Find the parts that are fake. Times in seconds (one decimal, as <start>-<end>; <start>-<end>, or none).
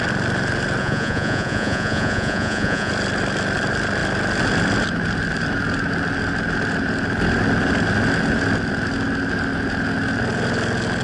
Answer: 0.8-2.9